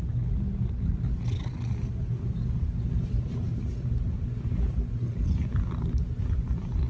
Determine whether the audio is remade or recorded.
recorded